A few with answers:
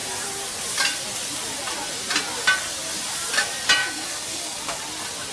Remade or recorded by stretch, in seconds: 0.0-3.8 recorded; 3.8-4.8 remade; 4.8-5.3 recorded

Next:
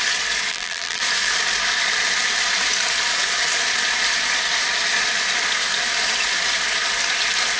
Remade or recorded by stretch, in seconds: 0.0-0.5 recorded; 0.5-1.0 remade; 1.0-7.6 recorded